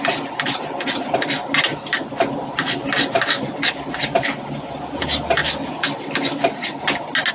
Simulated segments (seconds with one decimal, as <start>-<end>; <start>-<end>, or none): none